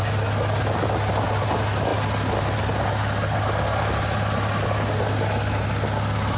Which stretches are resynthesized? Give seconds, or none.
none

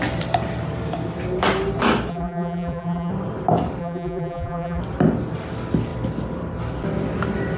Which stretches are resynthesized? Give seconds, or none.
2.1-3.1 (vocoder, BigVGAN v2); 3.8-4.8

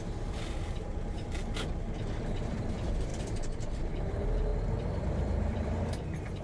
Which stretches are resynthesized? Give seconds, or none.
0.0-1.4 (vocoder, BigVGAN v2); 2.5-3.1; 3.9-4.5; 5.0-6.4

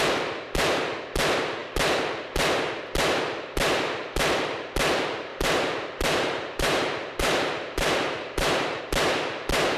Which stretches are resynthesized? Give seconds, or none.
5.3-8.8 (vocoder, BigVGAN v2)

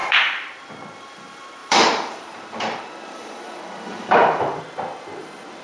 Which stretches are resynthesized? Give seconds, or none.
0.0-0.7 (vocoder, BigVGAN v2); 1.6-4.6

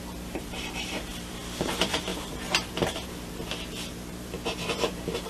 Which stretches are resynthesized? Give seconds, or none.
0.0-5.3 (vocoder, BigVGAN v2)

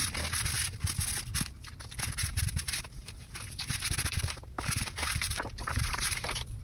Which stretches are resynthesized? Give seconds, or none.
2.1-6.6 (vocoder, BigVGAN v2)

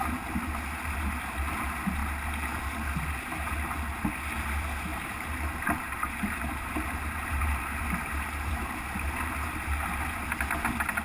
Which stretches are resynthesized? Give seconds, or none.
4.9-8.5 (vocoder, BigVGAN v2)